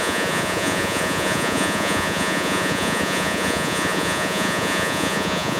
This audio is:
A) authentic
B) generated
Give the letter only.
B